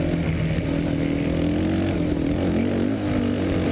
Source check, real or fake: real